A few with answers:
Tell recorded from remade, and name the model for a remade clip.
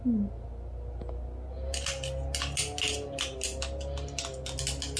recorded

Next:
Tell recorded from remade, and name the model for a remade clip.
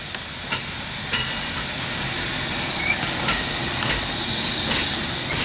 recorded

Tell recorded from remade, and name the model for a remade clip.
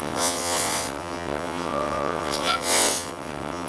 remade, vocoder, WaveNeXt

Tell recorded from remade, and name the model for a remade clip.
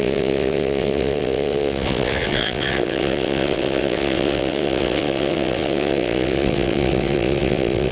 remade, vocoder, WaveNeXt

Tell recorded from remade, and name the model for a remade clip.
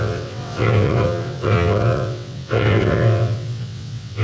remade, vocoder, WaveNeXt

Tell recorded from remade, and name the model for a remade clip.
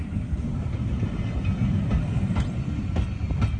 recorded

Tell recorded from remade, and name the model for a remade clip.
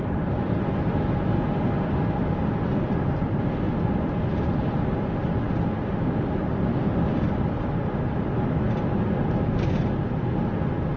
recorded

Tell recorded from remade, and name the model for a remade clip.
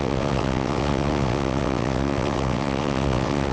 remade, vocoder, WaveNeXt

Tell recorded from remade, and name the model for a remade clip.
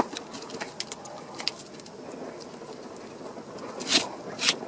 recorded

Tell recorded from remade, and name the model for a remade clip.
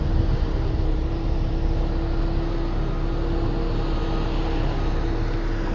recorded